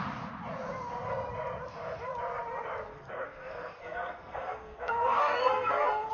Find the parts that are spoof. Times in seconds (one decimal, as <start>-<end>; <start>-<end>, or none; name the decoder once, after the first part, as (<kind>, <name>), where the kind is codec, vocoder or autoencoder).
2.9-6.1 (codec, SNAC)